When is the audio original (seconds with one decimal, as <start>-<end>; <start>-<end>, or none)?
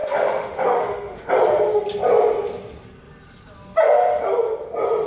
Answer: 1.3-5.1